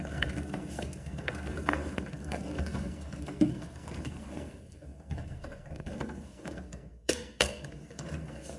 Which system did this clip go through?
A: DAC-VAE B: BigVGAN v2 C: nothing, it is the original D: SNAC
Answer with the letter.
D